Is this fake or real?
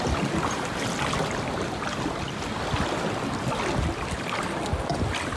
real